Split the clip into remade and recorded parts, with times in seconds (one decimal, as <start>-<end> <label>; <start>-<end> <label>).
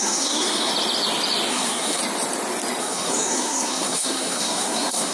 0.0-0.7 remade; 0.7-1.5 recorded; 1.5-2.0 remade; 2.0-2.8 recorded; 2.8-5.1 remade